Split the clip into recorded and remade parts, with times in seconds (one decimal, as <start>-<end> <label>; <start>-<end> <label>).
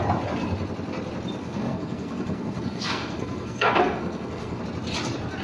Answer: 0.0-1.4 recorded; 1.4-4.6 remade; 4.6-5.4 recorded